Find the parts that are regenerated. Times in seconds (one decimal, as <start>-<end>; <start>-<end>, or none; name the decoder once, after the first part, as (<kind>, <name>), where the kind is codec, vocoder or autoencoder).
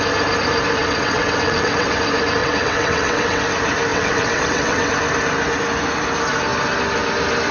0.8-2.0 (vocoder, WaveNeXt); 2.4-3.4; 3.9-4.9